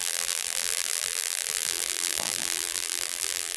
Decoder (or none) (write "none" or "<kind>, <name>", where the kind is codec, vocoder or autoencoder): vocoder, BigVGAN v2